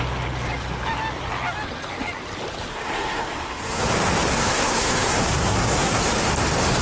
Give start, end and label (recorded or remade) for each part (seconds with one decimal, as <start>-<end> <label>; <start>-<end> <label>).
0.0-2.7 recorded; 2.7-3.9 remade; 3.9-4.3 recorded; 4.3-6.0 remade; 6.0-6.8 recorded